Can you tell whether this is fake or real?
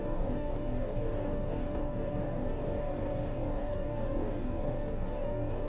fake